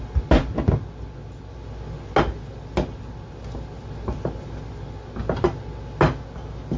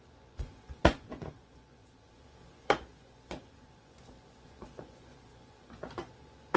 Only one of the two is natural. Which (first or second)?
first